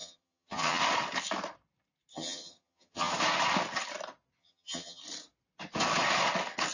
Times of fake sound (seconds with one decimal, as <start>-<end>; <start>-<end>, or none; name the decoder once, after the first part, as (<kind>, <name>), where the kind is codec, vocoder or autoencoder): 0.0-0.8 (vocoder, HiFi-GAN); 2.1-3.1; 4.4-5.0